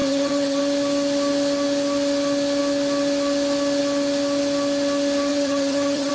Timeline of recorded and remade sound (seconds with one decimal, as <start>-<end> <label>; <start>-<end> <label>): 0.0-0.6 remade; 0.6-5.3 recorded; 5.3-6.1 remade